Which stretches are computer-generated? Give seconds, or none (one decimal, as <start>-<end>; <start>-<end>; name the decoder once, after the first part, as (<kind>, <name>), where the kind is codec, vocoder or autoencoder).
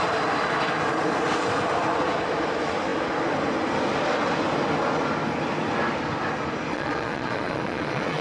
6.7-8.2 (vocoder, Vocos)